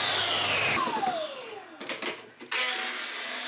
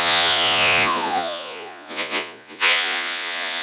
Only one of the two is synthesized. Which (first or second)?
second